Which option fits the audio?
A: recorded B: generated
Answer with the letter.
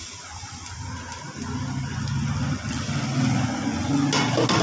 A